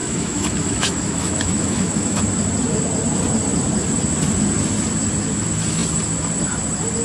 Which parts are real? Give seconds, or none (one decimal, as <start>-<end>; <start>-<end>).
2.2-7.0